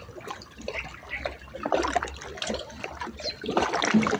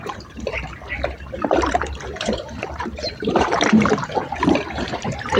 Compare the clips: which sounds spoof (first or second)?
second